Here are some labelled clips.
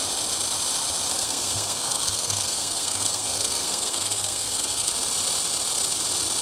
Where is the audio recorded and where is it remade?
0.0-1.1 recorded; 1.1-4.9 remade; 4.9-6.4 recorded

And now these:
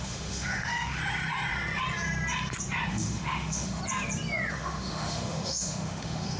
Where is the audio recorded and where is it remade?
0.0-1.0 remade; 1.0-2.9 recorded; 2.9-3.8 remade; 3.8-4.5 recorded; 4.5-6.4 remade

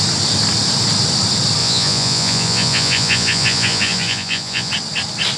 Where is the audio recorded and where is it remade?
0.0-1.6 recorded; 1.6-4.7 remade; 4.7-5.4 recorded